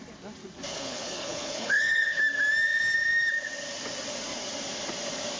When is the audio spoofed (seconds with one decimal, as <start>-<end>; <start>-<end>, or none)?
0.7-2.2